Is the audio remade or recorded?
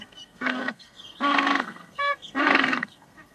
remade